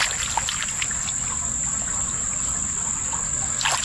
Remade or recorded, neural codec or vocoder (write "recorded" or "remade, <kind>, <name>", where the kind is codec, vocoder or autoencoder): recorded